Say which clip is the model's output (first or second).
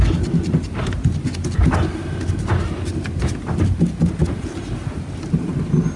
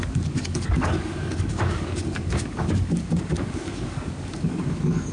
second